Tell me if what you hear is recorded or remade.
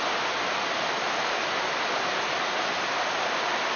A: recorded